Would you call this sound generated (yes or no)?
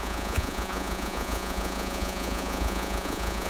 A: yes